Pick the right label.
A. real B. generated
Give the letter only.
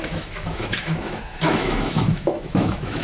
B